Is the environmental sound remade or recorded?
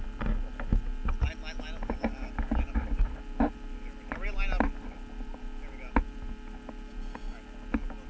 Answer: recorded